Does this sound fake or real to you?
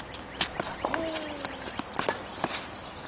real